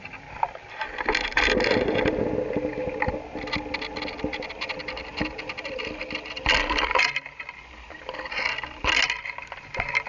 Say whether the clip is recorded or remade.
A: recorded